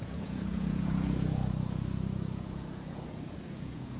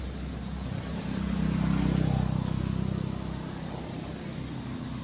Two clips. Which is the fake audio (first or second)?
first